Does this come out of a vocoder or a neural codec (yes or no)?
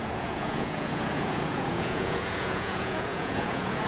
yes